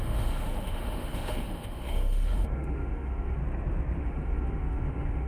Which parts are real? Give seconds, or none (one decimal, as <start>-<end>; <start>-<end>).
3.4-4.0